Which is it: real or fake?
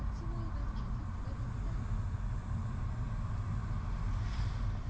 real